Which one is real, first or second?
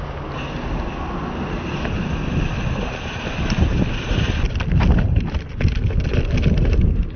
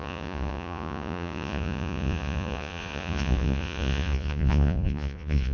first